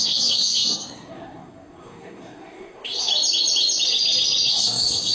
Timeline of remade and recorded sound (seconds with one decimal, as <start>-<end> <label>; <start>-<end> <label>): 0.0-3.1 remade; 3.1-4.5 recorded; 4.5-5.1 remade